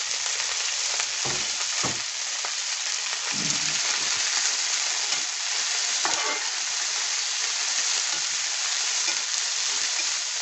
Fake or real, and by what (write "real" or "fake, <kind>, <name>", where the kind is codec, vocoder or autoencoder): fake, vocoder, BigVGAN v2